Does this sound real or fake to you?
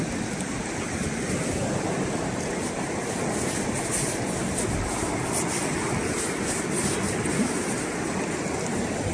real